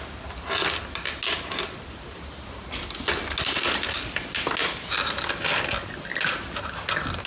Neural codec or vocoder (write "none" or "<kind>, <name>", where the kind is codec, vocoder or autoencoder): none